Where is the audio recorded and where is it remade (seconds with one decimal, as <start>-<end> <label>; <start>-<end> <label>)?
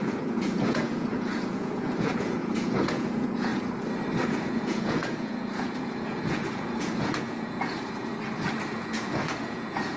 0.0-3.5 remade; 3.5-4.2 recorded; 4.2-8.1 remade; 8.1-8.7 recorded; 8.7-10.0 remade